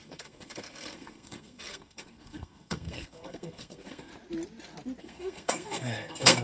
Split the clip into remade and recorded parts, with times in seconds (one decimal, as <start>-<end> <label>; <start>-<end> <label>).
0.0-4.1 remade; 4.1-5.0 recorded; 5.0-6.4 remade